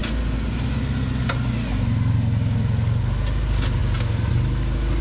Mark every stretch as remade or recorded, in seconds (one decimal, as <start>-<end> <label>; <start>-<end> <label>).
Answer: 0.0-5.0 recorded